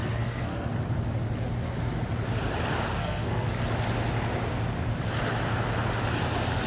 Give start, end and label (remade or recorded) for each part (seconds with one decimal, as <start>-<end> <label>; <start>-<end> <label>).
0.0-0.7 remade; 0.7-3.0 recorded; 3.0-3.5 remade; 3.5-6.7 recorded